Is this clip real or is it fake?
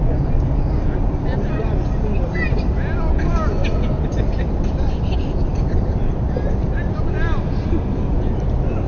real